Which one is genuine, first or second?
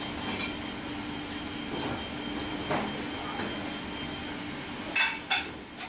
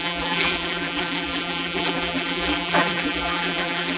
first